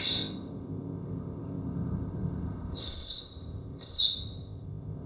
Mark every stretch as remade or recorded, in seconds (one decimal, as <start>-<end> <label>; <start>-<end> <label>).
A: 0.0-5.1 remade